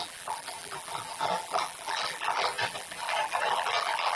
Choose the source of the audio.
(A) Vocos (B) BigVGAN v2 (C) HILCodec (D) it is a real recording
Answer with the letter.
B